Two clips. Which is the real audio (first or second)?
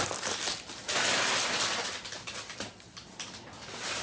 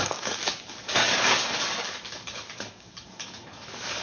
first